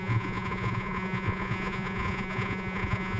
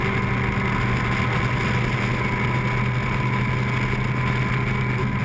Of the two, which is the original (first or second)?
second